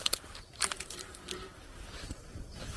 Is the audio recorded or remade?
remade